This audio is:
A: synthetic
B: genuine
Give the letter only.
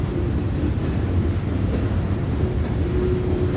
B